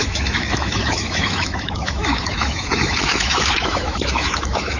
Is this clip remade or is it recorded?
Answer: remade